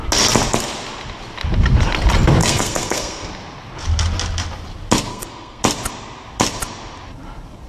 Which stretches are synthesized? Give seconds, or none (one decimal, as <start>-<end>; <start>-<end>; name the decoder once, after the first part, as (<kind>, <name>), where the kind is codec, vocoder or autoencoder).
2.4-3.3 (codec, SNAC); 5.1-5.6